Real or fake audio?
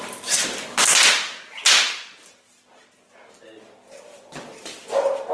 real